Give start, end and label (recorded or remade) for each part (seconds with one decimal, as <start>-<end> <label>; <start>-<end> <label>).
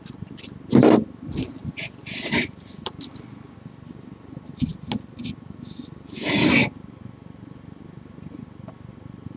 0.0-9.4 recorded